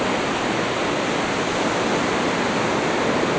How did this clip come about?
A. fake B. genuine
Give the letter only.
B